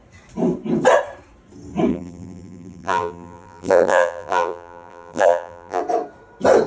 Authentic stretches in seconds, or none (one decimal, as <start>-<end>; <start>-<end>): 0.0-1.9; 5.8-6.7